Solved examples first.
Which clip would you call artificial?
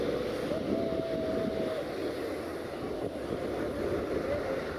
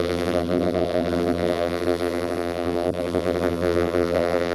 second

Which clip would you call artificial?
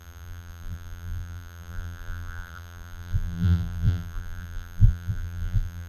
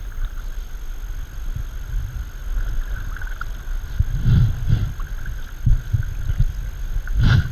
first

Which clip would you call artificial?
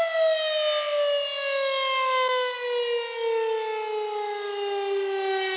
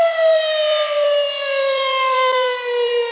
second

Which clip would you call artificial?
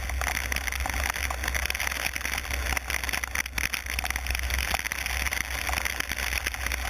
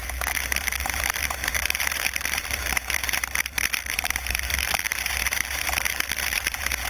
second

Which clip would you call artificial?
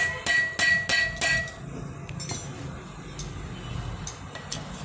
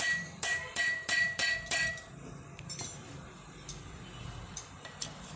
second